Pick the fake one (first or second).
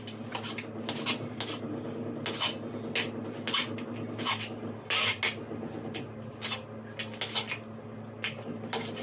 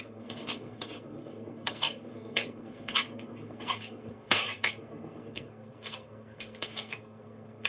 second